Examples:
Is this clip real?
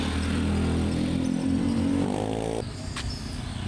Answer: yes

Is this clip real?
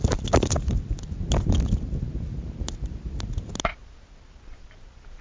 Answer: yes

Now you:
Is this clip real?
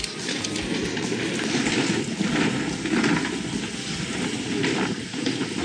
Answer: yes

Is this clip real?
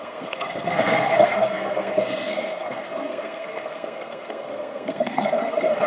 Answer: no